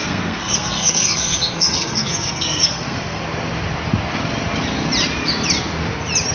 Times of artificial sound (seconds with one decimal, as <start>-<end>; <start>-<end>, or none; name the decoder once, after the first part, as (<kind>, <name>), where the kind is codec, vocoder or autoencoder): 0.0-3.2 (codec, SNAC)